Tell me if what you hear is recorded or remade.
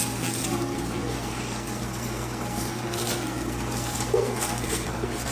remade